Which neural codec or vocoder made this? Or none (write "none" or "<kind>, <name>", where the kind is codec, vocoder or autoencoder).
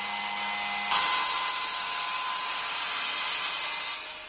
none